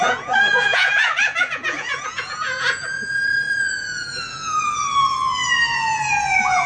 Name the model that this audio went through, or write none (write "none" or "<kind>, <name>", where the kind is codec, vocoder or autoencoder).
vocoder, Vocos